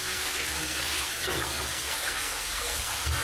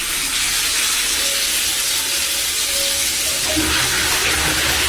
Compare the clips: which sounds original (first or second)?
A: second